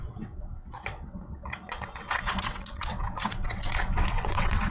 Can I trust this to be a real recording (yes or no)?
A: no